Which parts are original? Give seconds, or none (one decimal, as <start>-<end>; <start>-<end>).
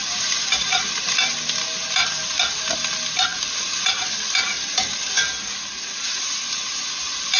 0.0-7.4